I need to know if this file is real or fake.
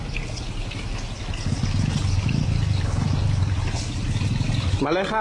real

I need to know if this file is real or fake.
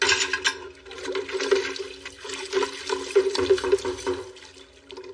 real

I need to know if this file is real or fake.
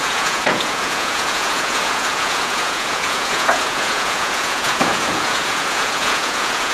fake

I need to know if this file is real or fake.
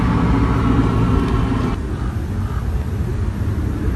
real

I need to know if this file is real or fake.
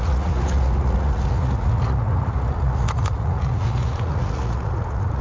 fake